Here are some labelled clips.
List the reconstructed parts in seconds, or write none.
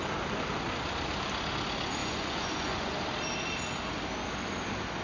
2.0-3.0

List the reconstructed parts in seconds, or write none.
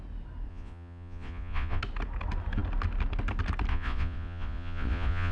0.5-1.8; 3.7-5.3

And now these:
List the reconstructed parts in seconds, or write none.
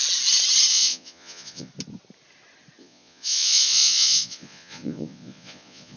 0.7-1.7; 2.8-6.0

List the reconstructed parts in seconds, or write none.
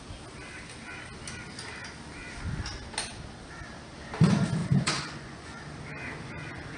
4.6-5.6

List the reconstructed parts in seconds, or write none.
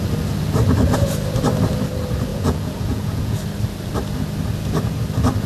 2.3-3.4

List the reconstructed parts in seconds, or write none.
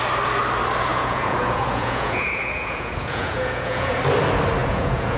0.9-4.0; 4.6-5.2